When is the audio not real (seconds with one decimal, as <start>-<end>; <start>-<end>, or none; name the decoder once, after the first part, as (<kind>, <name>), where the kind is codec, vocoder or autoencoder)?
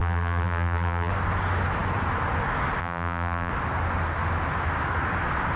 0.0-1.1 (vocoder, BigVGAN v2); 2.8-3.5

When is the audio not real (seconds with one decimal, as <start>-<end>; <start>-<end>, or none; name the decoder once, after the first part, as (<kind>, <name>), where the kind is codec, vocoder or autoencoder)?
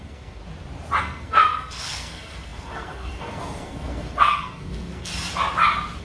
0.0-0.4 (codec, SNAC); 1.0-5.1